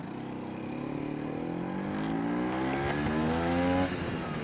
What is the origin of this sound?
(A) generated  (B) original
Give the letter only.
B